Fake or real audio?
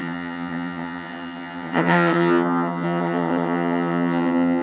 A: fake